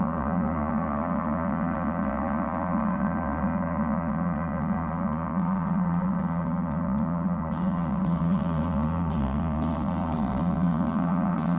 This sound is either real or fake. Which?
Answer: fake